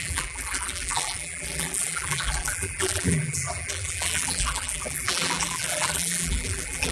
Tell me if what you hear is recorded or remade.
remade